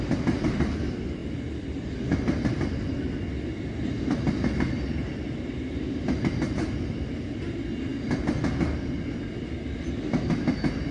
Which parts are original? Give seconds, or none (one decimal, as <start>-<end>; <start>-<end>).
0.0-10.9